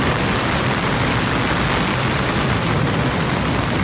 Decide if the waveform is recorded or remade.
recorded